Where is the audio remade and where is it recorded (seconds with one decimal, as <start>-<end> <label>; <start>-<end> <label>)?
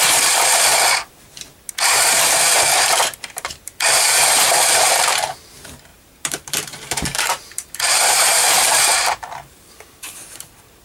0.0-0.7 remade; 0.7-1.7 recorded; 1.7-10.8 remade